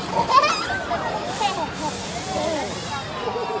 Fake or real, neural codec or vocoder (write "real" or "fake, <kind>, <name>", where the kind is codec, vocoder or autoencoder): real